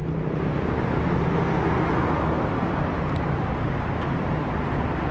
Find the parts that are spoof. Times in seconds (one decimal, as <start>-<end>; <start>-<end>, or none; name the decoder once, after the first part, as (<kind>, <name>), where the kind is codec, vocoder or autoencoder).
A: none